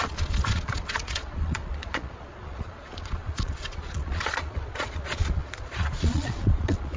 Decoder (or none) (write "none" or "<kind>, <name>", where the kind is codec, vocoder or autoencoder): vocoder, Vocos